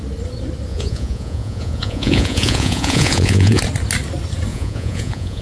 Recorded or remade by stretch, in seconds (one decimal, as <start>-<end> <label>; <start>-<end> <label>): 0.0-0.7 recorded; 0.7-3.6 remade; 3.6-4.5 recorded; 4.5-5.4 remade